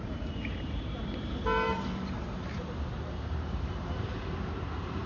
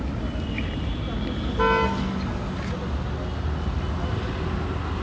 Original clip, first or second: second